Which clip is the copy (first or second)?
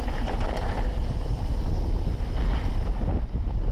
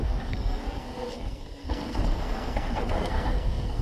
second